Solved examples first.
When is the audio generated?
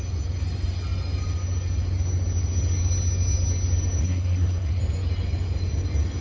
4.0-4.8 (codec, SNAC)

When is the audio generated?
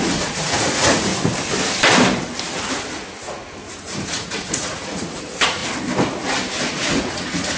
0.0-1.1 (vocoder, Vocos); 3.7-5.6; 6.6-7.6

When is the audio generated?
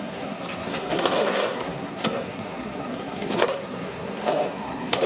0.0-5.1 (codec, SNAC)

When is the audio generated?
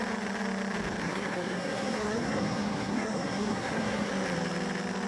1.0-4.1 (codec, SNAC)